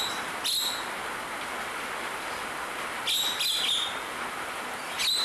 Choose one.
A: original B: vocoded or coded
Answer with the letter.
A